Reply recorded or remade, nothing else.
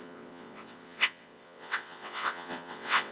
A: remade